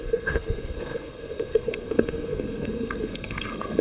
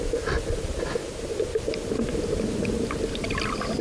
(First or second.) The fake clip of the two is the first